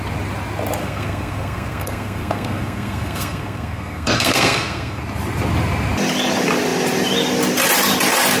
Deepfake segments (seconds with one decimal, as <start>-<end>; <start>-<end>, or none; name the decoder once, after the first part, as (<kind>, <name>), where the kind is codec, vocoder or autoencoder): 0.8-5.0 (codec, SNAC)